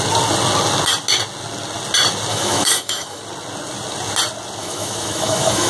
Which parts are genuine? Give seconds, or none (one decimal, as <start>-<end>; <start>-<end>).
0.0-2.3; 3.2-4.6